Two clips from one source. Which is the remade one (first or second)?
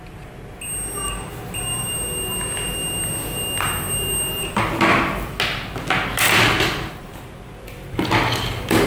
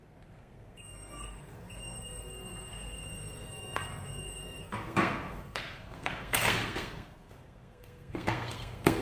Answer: second